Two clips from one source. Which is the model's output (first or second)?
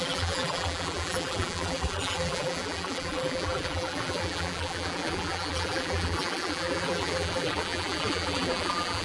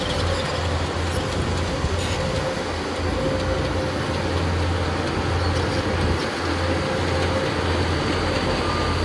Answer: first